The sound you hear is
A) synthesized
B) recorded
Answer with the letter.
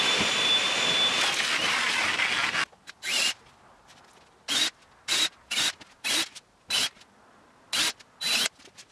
B